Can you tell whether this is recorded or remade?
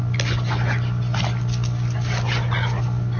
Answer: recorded